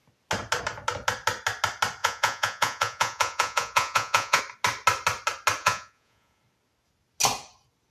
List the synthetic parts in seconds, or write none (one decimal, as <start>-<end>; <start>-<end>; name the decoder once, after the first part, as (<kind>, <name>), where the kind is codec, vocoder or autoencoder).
2.0-4.4 (vocoder, Vocos); 5.6-6.4